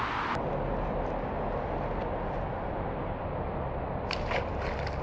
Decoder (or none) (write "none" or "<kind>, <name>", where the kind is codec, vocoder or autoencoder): none